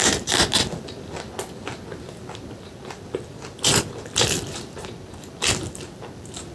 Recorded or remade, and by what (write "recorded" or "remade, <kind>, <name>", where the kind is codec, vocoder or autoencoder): recorded